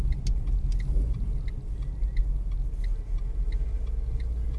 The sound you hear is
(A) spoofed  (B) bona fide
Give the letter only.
B